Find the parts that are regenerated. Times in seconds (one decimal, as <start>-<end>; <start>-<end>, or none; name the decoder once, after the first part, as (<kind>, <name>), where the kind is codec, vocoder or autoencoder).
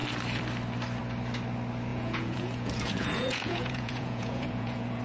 1.9-5.0 (vocoder, Vocos)